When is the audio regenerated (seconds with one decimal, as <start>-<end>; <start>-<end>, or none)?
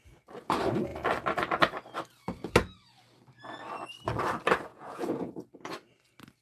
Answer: 4.7-5.3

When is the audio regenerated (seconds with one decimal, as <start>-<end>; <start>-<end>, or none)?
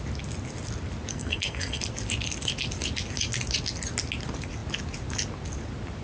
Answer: 1.1-1.8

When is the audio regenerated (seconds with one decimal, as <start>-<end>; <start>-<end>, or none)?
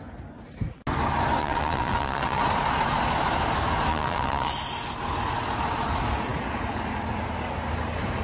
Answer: 1.4-2.4; 3.9-4.5